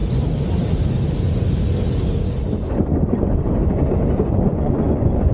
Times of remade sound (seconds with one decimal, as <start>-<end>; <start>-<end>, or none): 4.5-5.3